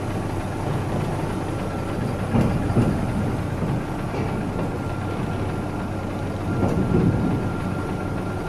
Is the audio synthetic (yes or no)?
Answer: no